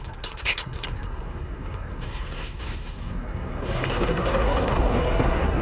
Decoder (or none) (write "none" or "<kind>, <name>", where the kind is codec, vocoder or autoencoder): codec, SNAC